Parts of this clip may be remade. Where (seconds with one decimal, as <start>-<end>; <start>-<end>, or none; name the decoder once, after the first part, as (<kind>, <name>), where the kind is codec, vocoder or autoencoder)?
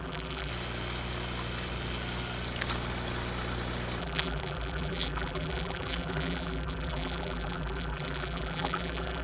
0.0-0.5 (vocoder, BigVGAN v2); 4.0-9.2